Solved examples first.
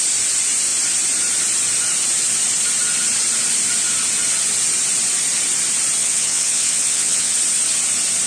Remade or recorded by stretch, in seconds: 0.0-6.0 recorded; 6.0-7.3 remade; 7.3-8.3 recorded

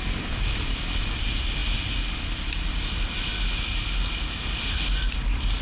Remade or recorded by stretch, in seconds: 0.0-5.6 recorded

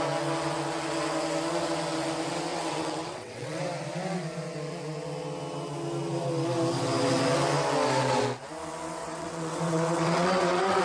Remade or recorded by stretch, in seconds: 0.0-2.5 recorded; 2.5-3.6 remade; 3.6-9.0 recorded; 9.0-10.8 remade

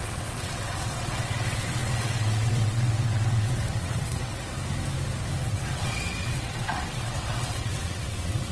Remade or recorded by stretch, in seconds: 0.0-4.4 remade; 4.4-5.4 recorded; 5.4-8.5 remade

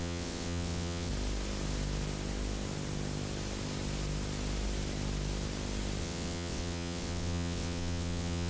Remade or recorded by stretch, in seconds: 0.0-1.1 remade; 1.1-6.0 recorded; 6.0-8.5 remade

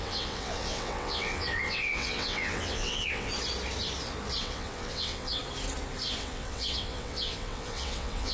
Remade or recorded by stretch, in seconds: 0.0-3.3 remade; 3.3-4.4 recorded; 4.4-5.4 remade; 5.4-6.2 recorded; 6.2-8.3 remade

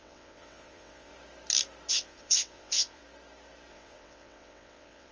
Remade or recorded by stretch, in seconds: 0.0-1.1 remade; 1.1-1.9 recorded; 1.9-3.0 remade; 3.0-3.7 recorded; 3.7-5.1 remade